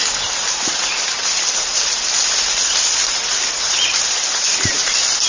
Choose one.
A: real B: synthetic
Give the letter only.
A